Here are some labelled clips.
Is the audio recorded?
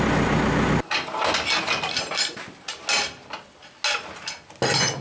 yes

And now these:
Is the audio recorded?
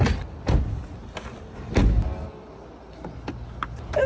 yes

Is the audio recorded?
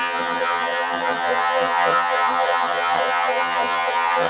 no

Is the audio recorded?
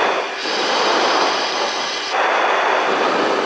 yes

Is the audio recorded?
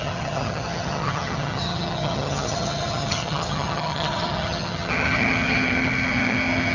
no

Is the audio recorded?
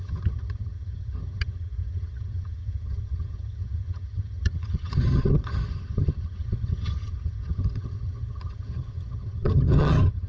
no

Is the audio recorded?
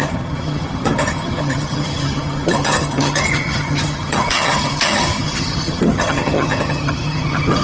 no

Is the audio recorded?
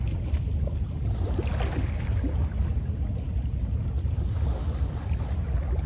yes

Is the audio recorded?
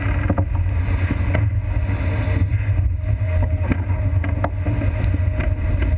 yes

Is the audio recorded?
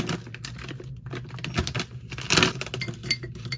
yes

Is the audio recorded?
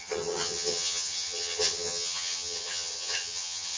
no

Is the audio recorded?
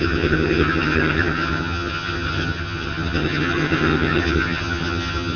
no